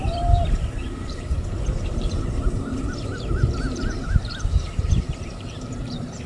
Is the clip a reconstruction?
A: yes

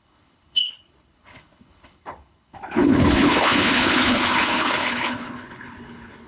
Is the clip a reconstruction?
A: yes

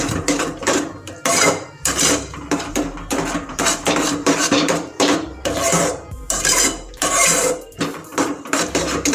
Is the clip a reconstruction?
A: yes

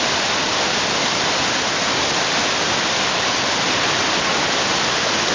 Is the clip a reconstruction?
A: no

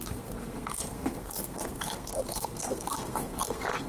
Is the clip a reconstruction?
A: yes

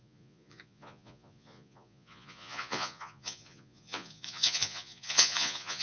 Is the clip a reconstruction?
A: yes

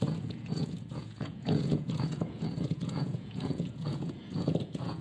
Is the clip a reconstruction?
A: yes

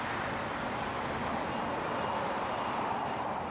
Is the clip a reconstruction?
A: no